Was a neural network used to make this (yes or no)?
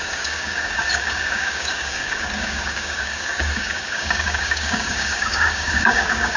yes